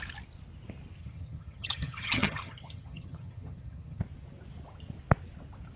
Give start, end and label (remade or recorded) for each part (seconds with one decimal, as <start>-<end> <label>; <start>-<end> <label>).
0.0-1.0 recorded; 1.0-4.0 remade; 4.0-5.8 recorded